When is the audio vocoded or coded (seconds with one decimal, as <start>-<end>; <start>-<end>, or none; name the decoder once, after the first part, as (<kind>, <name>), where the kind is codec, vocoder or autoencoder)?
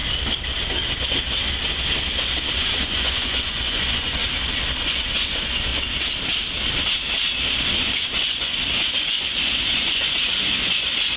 2.5-4.2 (vocoder, Vocos); 4.8-5.7; 7.6-11.2